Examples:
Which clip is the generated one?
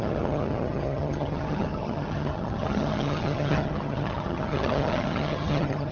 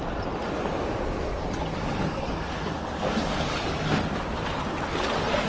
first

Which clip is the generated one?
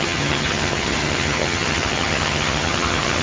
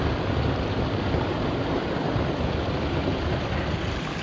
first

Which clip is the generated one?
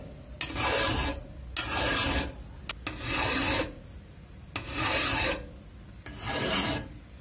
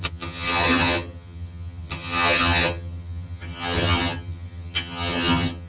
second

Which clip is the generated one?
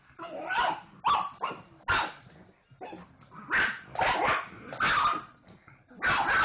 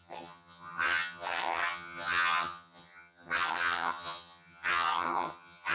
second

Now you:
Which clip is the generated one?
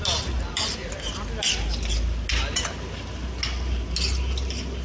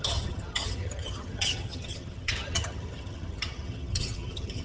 second